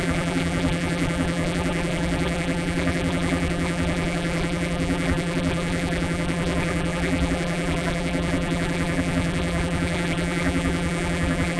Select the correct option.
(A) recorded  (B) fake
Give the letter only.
B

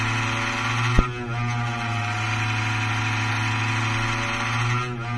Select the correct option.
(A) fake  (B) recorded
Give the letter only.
B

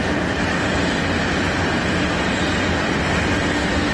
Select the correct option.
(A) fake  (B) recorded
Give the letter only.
B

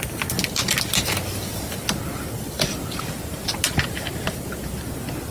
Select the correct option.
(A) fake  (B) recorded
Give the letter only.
B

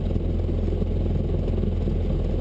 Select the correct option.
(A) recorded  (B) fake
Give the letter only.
A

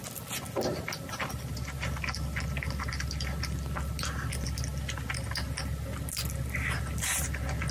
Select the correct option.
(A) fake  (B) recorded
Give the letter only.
B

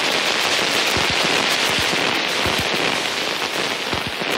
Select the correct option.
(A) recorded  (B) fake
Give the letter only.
A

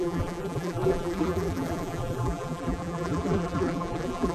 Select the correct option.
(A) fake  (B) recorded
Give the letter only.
A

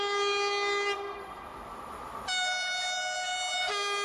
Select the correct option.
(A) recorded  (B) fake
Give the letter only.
A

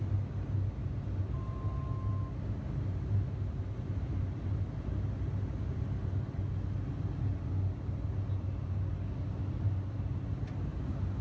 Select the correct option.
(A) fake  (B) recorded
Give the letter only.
B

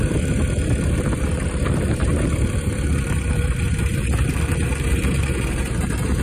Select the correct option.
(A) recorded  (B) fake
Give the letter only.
B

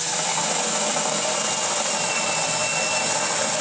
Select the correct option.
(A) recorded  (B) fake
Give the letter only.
A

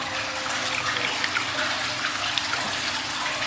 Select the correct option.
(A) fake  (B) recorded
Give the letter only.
B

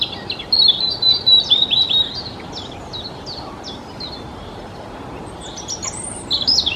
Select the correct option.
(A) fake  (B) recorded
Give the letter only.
A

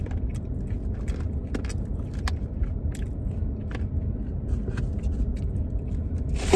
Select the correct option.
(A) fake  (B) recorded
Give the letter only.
B